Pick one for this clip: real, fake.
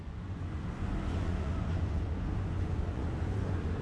fake